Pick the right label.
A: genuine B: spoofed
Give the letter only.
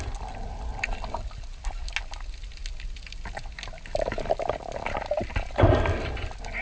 A